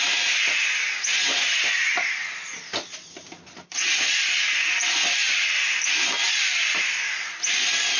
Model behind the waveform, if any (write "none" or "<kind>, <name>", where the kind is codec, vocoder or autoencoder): none